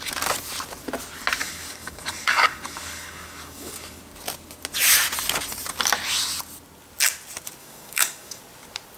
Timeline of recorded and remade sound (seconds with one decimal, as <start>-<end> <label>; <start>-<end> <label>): 0.0-1.4 recorded; 1.4-4.0 remade; 4.0-7.6 recorded; 7.6-8.4 remade; 8.4-9.0 recorded

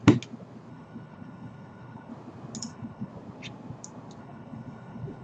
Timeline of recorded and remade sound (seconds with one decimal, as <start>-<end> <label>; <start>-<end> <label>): 0.0-0.7 recorded; 0.7-2.1 remade; 2.1-2.6 recorded; 2.6-3.1 remade; 3.1-4.2 recorded; 4.2-5.2 remade